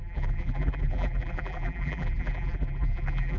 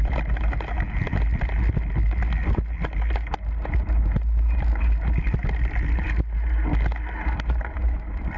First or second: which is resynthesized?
first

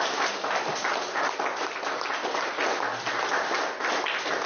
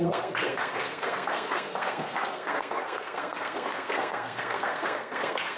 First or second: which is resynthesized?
second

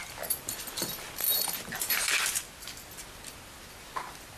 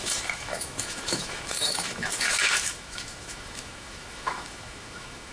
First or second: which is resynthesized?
second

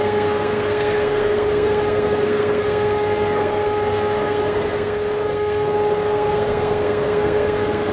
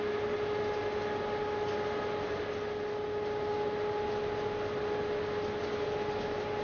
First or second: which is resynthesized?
first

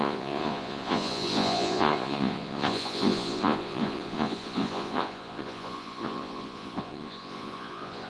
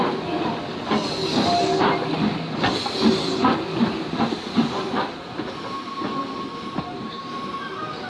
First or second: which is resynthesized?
first